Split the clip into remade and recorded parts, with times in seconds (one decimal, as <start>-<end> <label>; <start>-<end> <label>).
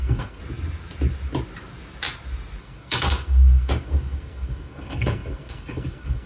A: 0.0-0.4 remade; 0.4-2.6 recorded; 2.6-6.3 remade